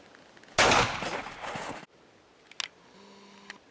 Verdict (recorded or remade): recorded